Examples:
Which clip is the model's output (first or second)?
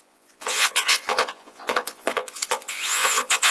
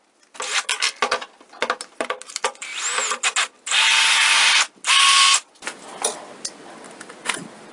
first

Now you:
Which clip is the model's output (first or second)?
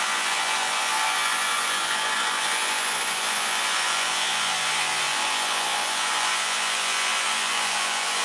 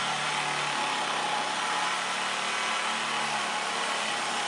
first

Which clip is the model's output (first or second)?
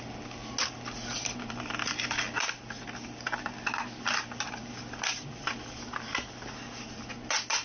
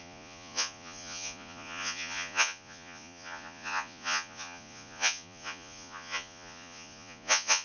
second